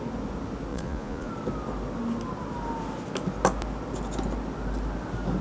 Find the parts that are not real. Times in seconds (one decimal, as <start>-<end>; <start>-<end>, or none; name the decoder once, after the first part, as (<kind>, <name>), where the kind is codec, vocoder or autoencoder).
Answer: 0.7-1.3 (vocoder, Vocos)

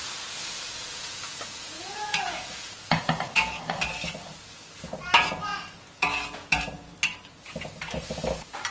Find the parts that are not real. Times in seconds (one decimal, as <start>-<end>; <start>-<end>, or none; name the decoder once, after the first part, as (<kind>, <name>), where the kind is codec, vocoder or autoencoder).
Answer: 0.0-3.6 (vocoder, Vocos); 5.5-6.6

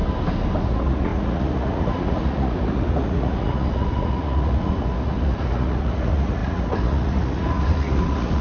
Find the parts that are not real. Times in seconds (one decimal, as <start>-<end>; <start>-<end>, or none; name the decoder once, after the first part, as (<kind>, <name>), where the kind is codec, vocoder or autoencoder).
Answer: 0.6-8.4 (vocoder, Vocos)

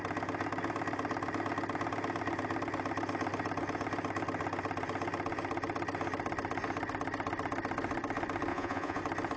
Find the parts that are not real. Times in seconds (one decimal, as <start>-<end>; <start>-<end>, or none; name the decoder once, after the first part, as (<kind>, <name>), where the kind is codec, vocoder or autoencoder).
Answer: 8.5-9.0 (vocoder, Vocos)

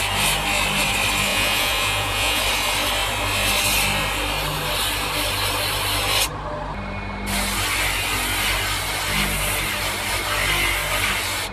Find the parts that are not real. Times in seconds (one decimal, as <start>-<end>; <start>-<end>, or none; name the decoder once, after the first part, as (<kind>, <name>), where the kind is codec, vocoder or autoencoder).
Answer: 1.3-2.4 (vocoder, Vocos)